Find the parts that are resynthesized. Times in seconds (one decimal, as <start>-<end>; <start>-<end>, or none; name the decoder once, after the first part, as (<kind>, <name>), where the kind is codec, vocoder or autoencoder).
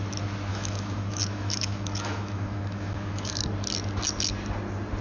0.5-3.4 (autoencoder, DAC-VAE)